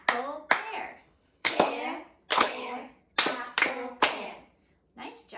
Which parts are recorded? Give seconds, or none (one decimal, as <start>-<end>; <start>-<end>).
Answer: 0.0-1.0; 1.7-2.3; 2.9-5.4